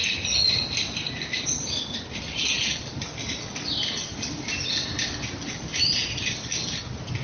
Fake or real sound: real